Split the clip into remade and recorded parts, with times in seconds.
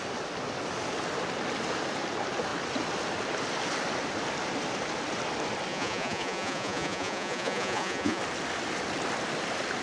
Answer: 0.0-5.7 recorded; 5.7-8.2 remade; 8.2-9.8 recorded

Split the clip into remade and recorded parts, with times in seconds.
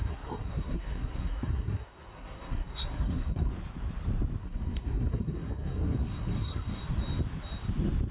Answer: 0.0-3.5 remade; 3.5-4.4 recorded; 4.4-6.8 remade; 6.8-8.1 recorded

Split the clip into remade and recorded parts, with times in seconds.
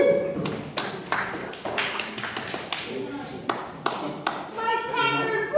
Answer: 0.0-1.4 recorded; 1.4-2.1 remade; 2.1-5.6 recorded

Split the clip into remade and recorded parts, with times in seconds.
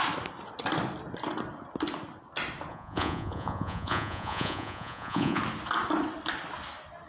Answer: 0.0-2.7 recorded; 2.7-5.4 remade; 5.4-7.1 recorded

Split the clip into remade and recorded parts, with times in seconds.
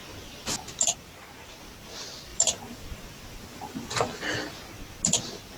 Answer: 0.0-0.9 recorded; 0.9-1.6 remade; 1.6-2.3 recorded; 2.3-3.8 remade; 3.8-5.6 recorded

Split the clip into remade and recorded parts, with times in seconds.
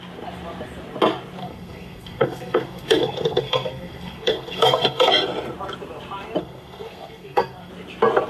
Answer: 0.0-1.4 recorded; 1.4-5.1 remade; 5.1-6.4 recorded; 6.4-7.7 remade; 7.7-8.3 recorded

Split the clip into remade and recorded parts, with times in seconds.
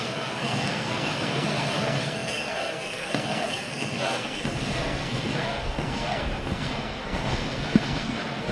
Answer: 0.0-8.5 remade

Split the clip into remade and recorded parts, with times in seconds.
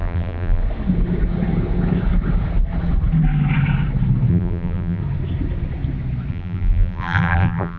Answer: 0.0-0.6 remade; 0.6-4.3 recorded; 4.3-5.0 remade; 5.0-6.3 recorded; 6.3-7.8 remade